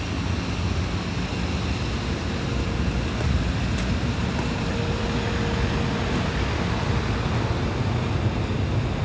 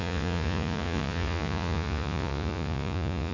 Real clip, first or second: first